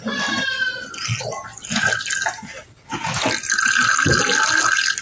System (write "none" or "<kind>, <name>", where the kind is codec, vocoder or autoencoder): none